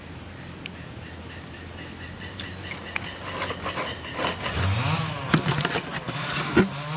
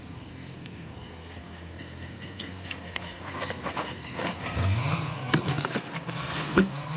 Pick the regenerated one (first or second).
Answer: second